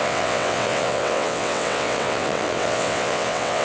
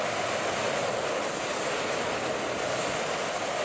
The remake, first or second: first